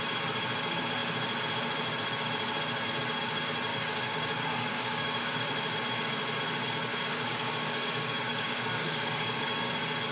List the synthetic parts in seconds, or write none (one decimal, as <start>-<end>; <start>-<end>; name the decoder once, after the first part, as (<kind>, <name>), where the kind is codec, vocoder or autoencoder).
3.7-5.5 (codec, DAC); 6.9-9.7